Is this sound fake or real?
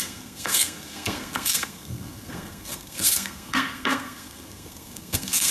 fake